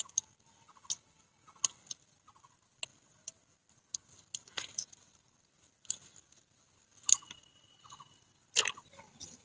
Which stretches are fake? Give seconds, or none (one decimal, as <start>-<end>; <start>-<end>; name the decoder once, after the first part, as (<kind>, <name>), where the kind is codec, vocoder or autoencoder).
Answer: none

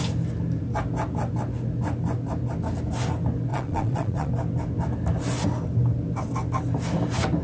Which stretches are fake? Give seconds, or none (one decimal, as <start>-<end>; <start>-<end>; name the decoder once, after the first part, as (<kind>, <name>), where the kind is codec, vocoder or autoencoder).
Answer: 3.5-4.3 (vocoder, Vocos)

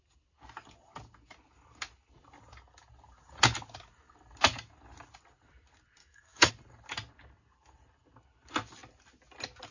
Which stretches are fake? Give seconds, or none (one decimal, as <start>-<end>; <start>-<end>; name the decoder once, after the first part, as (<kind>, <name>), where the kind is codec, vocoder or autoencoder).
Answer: 6.0-6.5 (autoencoder, DAC-VAE)

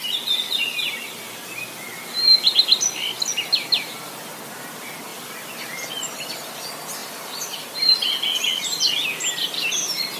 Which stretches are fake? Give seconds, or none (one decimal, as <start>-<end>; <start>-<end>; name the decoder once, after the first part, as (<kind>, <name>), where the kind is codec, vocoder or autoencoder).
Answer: 5.1-5.9 (vocoder, BigVGAN v2)

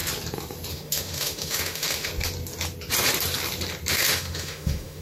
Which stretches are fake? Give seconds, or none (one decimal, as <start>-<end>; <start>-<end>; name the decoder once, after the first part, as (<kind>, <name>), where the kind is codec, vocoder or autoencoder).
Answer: 0.7-2.1 (autoencoder, DAC-VAE); 3.9-5.0